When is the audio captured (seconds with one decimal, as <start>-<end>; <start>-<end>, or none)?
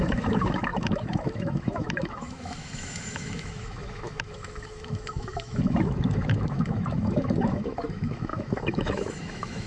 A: none